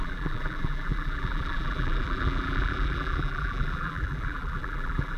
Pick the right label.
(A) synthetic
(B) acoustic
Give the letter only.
A